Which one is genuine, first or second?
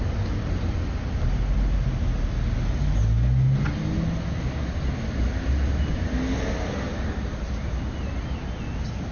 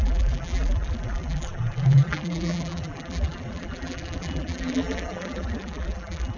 first